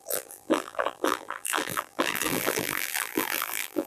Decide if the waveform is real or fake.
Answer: fake